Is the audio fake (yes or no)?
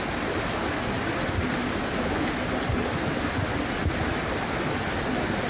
no